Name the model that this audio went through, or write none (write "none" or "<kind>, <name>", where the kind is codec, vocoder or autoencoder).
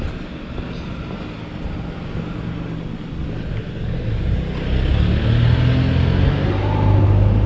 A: none